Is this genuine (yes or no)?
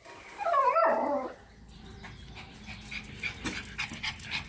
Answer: yes